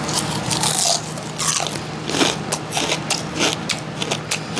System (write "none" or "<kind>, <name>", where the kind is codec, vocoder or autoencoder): none